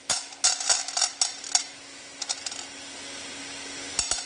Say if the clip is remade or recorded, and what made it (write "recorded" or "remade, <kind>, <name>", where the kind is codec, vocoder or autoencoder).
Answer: recorded